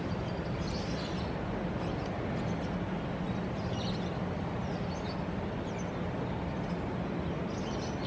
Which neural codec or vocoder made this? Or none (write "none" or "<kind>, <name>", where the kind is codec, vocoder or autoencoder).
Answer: none